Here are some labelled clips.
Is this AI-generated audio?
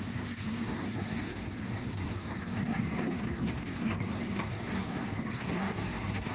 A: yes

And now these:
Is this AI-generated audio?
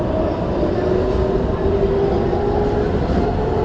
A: no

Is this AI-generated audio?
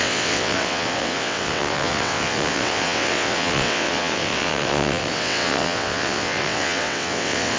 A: yes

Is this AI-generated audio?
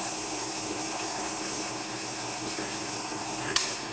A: yes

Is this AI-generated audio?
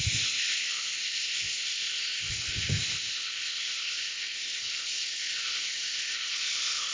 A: yes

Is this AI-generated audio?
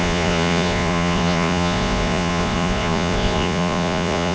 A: yes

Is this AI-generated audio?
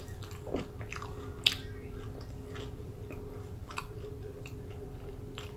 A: no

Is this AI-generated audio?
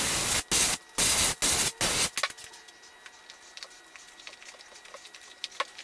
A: no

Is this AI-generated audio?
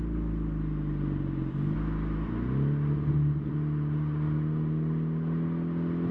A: no